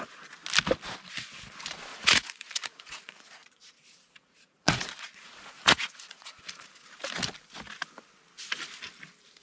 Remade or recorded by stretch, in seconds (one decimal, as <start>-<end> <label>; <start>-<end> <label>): 0.0-1.9 recorded; 1.9-6.4 remade; 6.4-9.4 recorded